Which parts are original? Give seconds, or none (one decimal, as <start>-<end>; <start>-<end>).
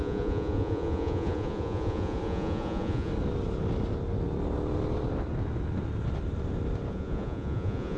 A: 3.1-6.9